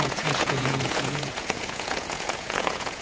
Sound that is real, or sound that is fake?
fake